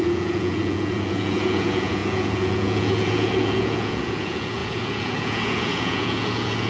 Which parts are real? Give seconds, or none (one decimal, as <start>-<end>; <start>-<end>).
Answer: none